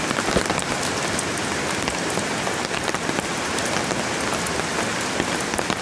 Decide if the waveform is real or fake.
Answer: real